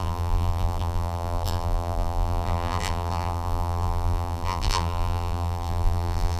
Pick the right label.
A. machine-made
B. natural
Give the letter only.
A